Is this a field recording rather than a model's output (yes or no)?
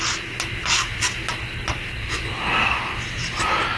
yes